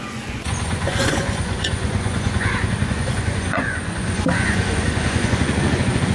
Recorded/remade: remade